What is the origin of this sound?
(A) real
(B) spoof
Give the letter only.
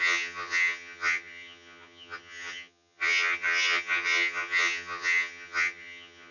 B